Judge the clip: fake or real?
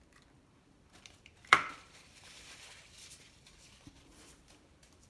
fake